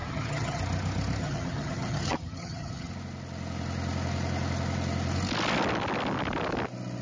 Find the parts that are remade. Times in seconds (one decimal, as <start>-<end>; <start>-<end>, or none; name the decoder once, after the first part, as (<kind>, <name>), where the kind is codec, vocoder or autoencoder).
0.0-0.6 (vocoder, HiFi-GAN); 1.2-2.9